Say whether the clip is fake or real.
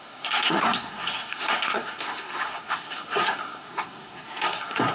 fake